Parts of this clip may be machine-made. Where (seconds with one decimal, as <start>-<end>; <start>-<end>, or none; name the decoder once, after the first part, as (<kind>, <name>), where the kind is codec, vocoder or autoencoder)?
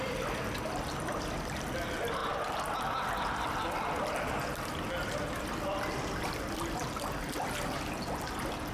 none